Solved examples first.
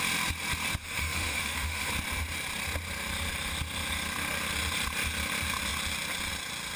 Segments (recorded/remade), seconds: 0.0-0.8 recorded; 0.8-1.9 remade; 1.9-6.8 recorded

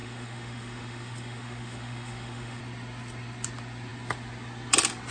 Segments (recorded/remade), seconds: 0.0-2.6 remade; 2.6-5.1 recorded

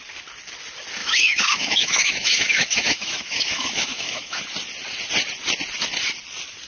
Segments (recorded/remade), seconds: 0.0-1.0 recorded; 1.0-4.4 remade; 4.4-6.7 recorded

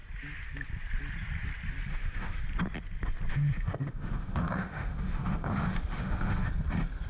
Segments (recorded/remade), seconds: 0.0-1.9 recorded; 1.9-2.4 remade; 2.4-3.3 recorded; 3.3-6.5 remade; 6.5-7.1 recorded

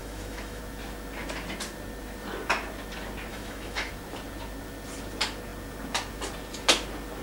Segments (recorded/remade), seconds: 0.0-0.6 remade; 0.6-3.3 recorded; 3.3-3.9 remade; 3.9-7.2 recorded